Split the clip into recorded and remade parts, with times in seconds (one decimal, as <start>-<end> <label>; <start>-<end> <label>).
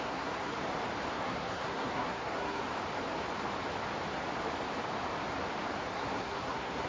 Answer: 0.0-0.5 remade; 0.5-1.1 recorded; 1.1-2.6 remade; 2.6-5.8 recorded; 5.8-6.9 remade